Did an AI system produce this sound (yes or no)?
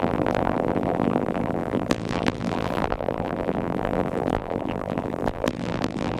yes